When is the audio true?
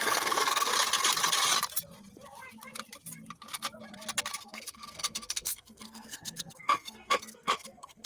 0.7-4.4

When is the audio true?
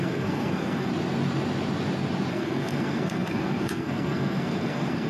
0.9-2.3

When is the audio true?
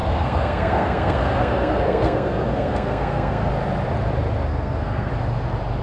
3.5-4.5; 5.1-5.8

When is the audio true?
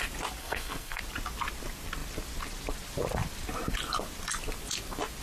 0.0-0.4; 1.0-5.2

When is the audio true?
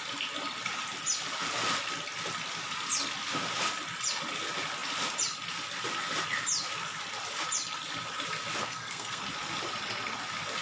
0.0-8.6; 9.2-10.6